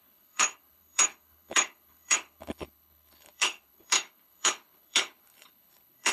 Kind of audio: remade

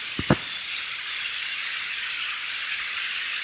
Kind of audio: recorded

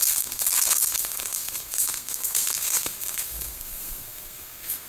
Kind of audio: remade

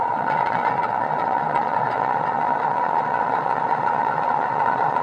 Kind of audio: remade